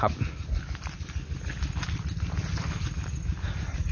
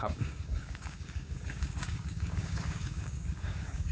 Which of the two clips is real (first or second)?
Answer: first